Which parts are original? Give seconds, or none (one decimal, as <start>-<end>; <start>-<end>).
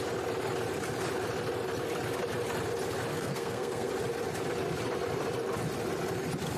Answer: 0.0-3.1; 3.9-6.6